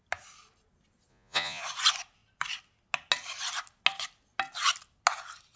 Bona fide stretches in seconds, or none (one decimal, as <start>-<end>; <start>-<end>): 0.0-1.1; 1.6-5.6